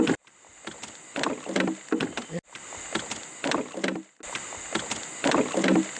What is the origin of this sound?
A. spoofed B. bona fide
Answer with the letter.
B